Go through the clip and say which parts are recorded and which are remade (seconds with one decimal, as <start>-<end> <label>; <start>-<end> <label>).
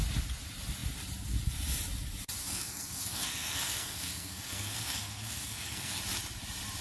0.0-2.4 recorded; 2.4-6.0 remade; 6.0-6.8 recorded